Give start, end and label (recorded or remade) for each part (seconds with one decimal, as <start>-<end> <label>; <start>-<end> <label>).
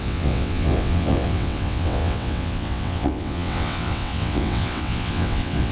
0.0-5.7 remade